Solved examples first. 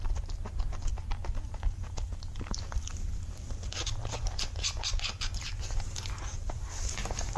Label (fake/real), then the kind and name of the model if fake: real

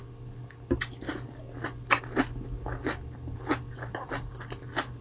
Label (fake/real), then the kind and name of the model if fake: real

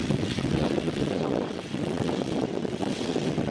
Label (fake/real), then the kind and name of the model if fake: fake, vocoder, WaveNeXt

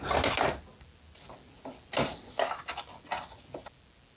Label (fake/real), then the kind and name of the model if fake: real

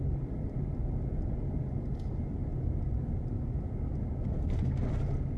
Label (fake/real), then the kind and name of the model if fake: real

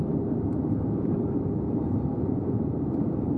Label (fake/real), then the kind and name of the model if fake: fake, vocoder, BigVGAN v2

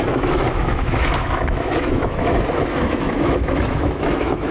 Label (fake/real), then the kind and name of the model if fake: fake, autoencoder, DAC-VAE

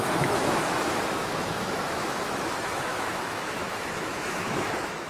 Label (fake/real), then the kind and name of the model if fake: fake, autoencoder, DAC-VAE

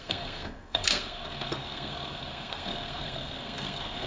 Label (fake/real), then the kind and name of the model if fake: fake, codec, SNAC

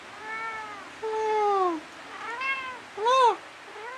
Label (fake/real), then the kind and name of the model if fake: real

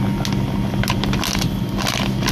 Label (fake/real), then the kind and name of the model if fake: real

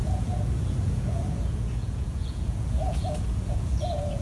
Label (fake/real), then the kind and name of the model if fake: fake, vocoder, Vocos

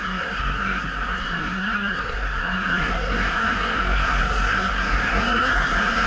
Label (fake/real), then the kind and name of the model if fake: fake, codec, SNAC